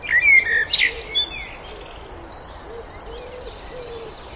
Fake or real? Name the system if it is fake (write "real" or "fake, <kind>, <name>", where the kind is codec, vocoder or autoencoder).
real